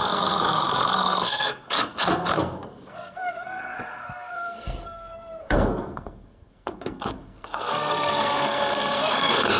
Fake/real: fake